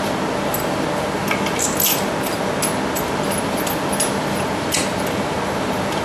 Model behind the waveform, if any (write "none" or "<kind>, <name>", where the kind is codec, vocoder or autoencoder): none